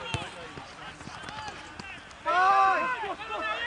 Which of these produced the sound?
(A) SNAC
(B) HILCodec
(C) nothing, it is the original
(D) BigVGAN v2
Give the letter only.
C